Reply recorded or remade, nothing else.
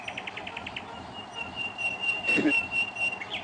recorded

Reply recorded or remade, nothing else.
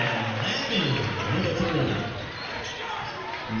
recorded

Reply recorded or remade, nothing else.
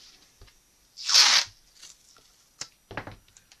recorded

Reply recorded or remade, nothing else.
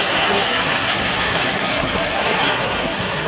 remade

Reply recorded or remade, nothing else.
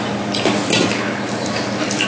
recorded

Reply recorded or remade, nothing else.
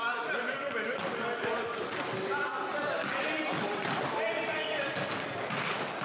recorded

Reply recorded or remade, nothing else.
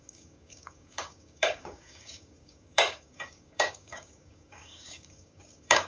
remade